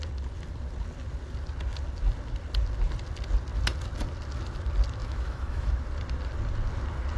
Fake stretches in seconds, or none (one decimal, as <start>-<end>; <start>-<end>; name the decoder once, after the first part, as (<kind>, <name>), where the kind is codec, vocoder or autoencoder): 5.0-5.7 (autoencoder, DAC-VAE)